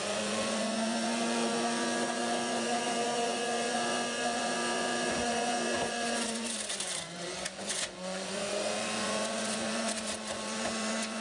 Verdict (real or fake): fake